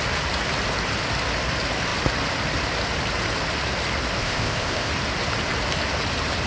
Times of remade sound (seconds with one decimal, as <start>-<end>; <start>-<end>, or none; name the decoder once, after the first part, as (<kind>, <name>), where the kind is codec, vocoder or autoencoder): 4.2-4.9 (codec, ZipCodec)